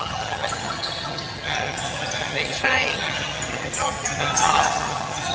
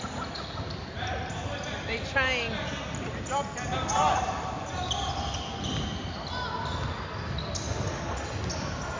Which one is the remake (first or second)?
first